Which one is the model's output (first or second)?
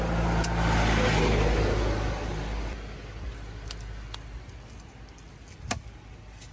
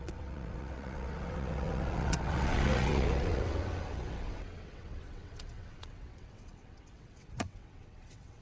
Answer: second